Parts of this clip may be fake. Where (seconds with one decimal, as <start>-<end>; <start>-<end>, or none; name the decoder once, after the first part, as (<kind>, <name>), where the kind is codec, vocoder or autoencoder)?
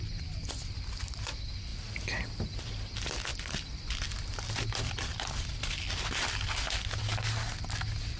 none